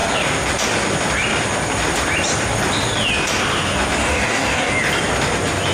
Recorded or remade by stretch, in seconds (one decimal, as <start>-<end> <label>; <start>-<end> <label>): 0.0-4.0 recorded; 4.0-4.7 remade; 4.7-5.7 recorded